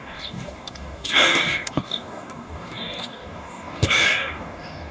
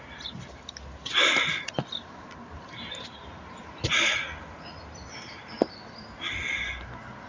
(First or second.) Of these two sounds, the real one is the second